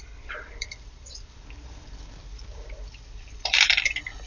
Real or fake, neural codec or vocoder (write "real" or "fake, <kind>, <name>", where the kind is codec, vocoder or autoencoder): fake, vocoder, BigVGAN v2